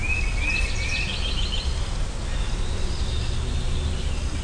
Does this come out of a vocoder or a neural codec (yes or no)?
no